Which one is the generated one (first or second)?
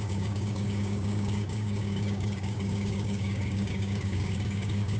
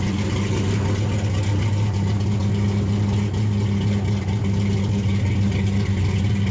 first